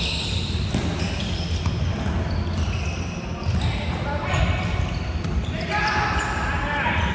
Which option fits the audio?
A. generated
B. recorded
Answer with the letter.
B